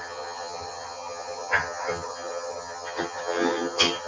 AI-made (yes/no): yes